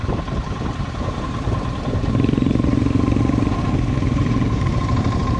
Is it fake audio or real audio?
fake